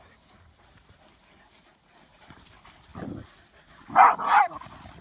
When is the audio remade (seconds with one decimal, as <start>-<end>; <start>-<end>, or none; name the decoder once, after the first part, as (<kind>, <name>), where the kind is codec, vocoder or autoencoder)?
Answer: 0.0-2.9 (vocoder, BigVGAN v2)

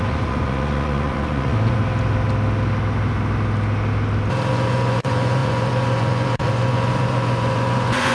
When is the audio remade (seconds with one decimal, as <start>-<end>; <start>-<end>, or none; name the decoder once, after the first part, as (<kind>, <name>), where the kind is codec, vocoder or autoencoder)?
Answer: 0.0-1.8 (vocoder, Vocos); 4.5-8.1